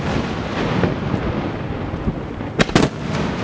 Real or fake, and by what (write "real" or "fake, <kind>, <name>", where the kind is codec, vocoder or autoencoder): real